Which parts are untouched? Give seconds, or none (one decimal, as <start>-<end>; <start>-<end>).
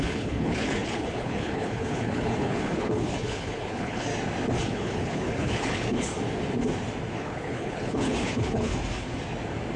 4.1-4.6; 6.1-7.1; 8.7-9.8